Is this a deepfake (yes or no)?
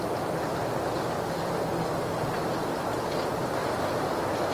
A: no